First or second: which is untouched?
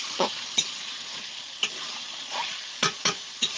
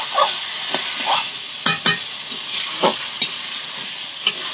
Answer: second